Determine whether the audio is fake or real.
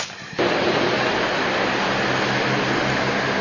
real